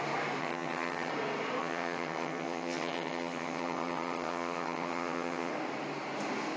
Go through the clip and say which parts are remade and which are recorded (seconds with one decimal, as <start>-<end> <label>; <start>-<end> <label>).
0.0-0.4 recorded; 0.4-1.1 remade; 1.1-1.6 recorded; 1.6-5.5 remade; 5.5-6.6 recorded